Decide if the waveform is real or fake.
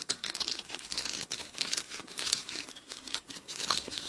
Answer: fake